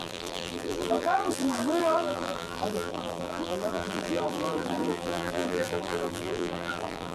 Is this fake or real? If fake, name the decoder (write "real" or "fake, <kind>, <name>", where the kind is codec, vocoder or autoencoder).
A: fake, vocoder, BigVGAN v2